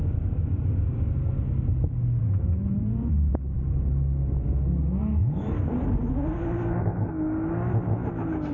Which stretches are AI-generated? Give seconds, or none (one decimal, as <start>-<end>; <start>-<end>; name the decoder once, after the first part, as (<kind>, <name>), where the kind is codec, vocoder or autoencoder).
2.2-3.3 (vocoder, BigVGAN v2); 5.2-6.1